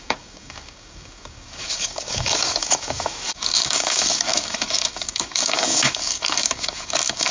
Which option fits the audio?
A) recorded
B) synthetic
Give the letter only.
B